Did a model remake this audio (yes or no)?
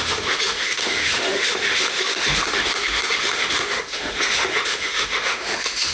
yes